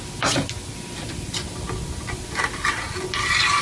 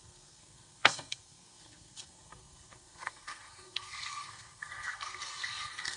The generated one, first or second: second